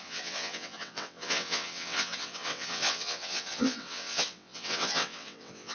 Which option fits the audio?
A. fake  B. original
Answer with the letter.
A